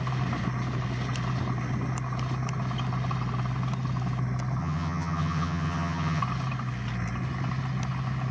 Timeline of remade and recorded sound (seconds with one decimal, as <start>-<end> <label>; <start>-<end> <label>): 0.0-4.6 recorded; 4.6-6.2 remade; 6.2-8.3 recorded